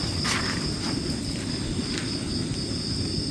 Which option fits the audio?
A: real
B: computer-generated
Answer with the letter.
A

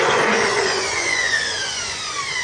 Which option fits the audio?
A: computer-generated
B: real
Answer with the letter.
A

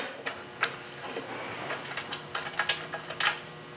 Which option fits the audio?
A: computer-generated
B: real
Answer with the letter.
B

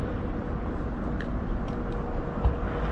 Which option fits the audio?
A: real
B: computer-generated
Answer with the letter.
A